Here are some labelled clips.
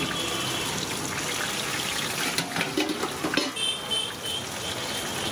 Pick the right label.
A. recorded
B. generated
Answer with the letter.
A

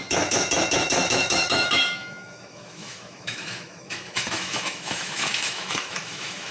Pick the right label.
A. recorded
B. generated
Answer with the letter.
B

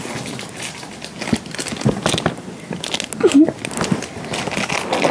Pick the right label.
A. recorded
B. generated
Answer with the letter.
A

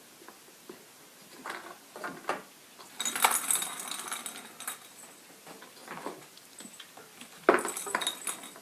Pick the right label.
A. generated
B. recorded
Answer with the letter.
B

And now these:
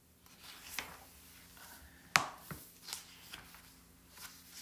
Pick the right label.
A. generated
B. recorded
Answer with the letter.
B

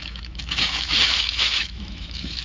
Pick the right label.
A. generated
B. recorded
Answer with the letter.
A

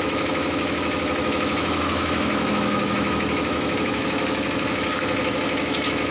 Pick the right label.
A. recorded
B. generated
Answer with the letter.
B